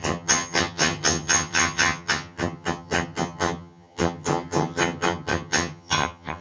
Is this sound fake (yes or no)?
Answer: yes